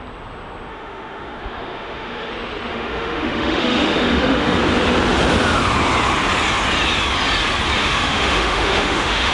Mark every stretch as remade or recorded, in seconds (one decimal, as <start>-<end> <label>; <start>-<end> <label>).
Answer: 0.0-0.7 recorded; 0.7-2.3 remade; 2.3-2.7 recorded; 2.7-4.6 remade; 4.6-7.8 recorded; 7.8-9.3 remade